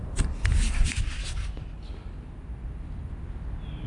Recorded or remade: recorded